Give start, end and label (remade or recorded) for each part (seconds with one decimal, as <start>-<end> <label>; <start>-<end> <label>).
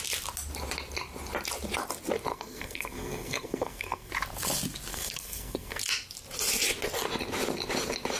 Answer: 0.0-2.3 recorded; 2.3-4.1 remade; 4.1-4.9 recorded; 4.9-5.8 remade; 5.8-8.2 recorded